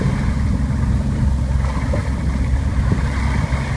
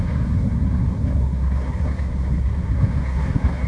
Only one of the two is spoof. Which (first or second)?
second